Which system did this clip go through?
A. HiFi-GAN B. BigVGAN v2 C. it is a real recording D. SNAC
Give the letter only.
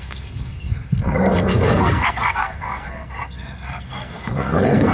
D